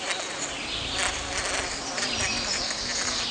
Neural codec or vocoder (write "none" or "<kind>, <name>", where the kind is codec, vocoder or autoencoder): none